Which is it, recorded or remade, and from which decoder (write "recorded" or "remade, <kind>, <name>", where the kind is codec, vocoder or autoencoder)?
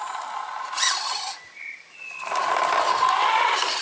recorded